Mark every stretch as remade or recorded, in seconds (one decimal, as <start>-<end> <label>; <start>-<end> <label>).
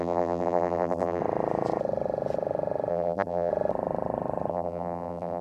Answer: 0.0-1.2 remade; 1.2-2.9 recorded; 2.9-3.5 remade; 3.5-4.5 recorded; 4.5-5.4 remade